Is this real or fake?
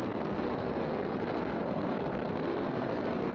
fake